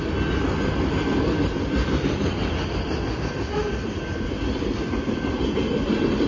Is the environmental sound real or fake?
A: real